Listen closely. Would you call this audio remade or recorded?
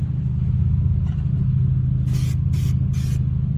recorded